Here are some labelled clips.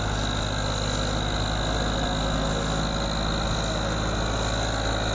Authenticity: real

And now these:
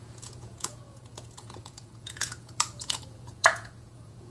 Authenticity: fake